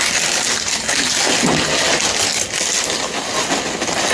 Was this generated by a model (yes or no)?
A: no